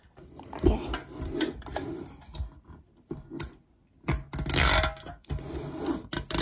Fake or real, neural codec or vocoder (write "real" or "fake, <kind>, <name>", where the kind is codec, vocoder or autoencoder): real